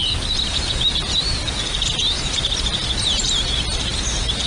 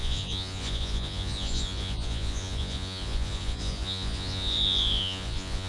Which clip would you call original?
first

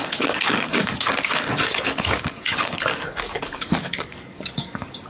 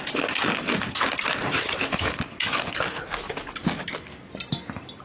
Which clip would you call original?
second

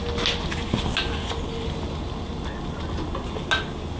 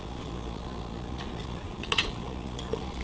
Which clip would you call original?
first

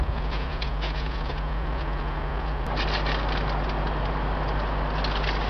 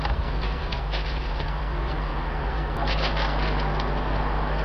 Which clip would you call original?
first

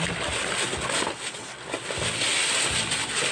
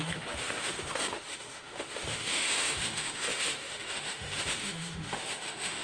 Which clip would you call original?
first